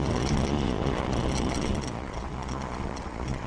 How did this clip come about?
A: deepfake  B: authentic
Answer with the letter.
A